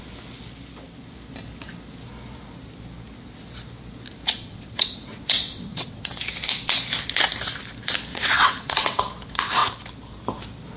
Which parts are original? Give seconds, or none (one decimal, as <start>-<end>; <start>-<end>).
0.0-4.4; 6.1-8.1; 9.0-10.8